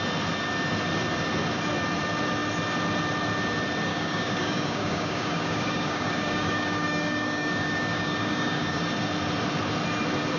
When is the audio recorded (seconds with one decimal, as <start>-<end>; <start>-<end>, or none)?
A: 0.0-3.9; 8.8-10.4

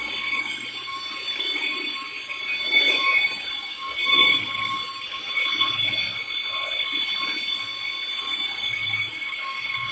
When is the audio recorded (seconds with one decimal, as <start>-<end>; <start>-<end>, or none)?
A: 5.4-8.1